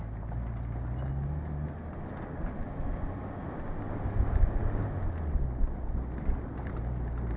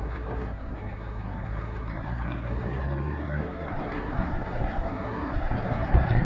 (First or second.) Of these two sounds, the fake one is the second